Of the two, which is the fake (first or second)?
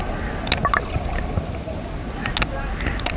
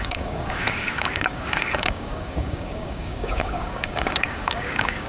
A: second